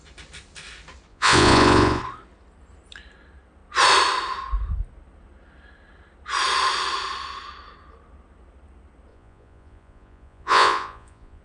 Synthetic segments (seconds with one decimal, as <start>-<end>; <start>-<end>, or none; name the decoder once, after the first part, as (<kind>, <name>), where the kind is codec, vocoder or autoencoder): 1.1-2.0 (vocoder, Vocos); 9.1-11.4